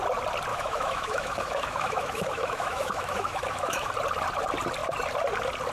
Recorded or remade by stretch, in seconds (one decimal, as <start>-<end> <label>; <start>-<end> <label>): 0.0-0.5 recorded; 0.5-3.9 remade; 3.9-5.7 recorded